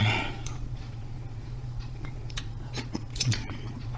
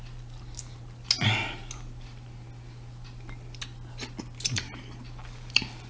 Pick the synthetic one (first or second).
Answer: first